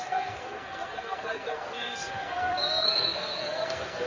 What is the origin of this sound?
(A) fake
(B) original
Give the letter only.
A